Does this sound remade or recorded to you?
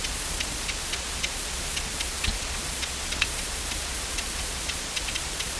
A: remade